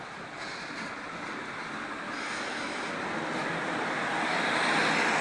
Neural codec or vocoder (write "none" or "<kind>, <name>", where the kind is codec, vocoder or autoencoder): none